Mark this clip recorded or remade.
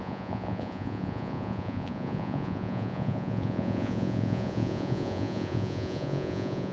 remade